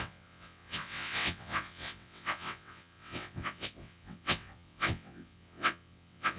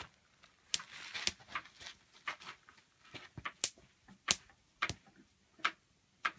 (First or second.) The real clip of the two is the second